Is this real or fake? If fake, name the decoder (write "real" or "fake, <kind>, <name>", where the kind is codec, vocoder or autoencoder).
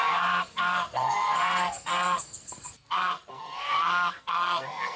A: fake, codec, SNAC